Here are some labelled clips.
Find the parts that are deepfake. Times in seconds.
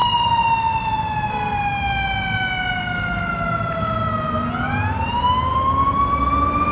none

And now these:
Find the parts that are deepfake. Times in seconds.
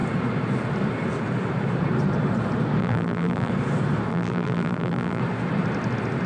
2.8-3.5 (vocoder, BigVGAN v2); 4.1-5.2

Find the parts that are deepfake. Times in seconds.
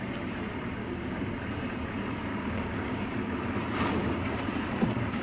0.8-1.3 (codec, DAC); 2.3-3.1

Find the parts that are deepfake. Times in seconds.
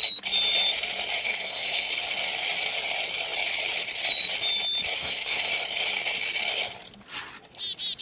1.2-1.9 (codec, SNAC); 5.0-5.5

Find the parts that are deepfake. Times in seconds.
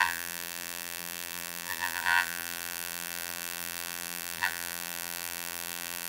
0.0-6.1 (vocoder, BigVGAN v2)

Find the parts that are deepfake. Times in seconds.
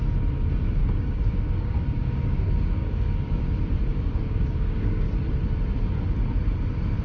0.8-3.4 (codec, DAC); 3.9-5.1